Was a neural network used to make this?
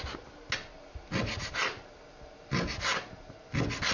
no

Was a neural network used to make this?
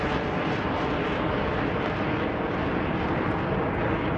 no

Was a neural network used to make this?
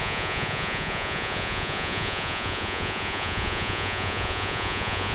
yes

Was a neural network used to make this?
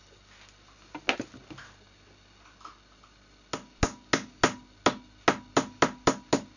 no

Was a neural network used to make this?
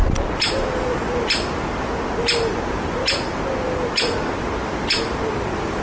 no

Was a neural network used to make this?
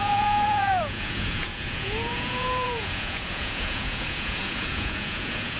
yes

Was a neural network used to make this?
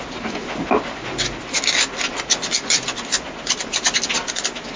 no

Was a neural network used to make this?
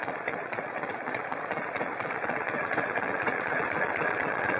yes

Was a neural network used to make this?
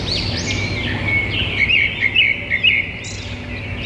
no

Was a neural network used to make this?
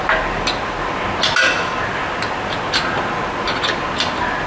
no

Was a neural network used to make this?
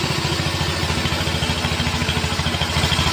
no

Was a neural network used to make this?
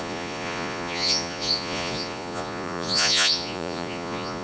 yes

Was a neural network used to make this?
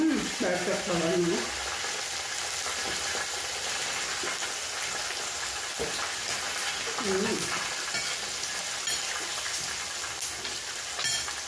no